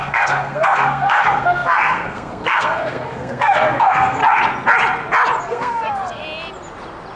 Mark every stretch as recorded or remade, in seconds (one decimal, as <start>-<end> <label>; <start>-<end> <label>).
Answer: 0.0-4.2 remade; 4.2-5.4 recorded; 5.4-6.2 remade; 6.2-7.2 recorded